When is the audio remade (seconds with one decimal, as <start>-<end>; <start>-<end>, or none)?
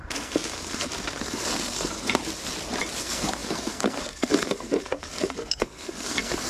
0.0-2.2; 3.0-6.5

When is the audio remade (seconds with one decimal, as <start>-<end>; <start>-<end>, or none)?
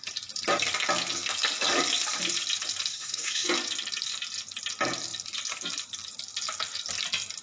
2.9-3.5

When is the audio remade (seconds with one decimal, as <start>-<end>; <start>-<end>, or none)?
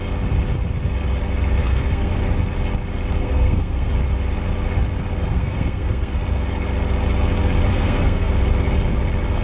1.6-2.2; 3.2-3.9; 5.3-6.2; 7.7-8.3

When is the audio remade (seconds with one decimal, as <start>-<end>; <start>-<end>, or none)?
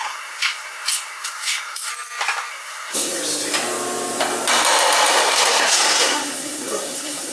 0.0-1.9; 2.5-3.2; 5.1-7.3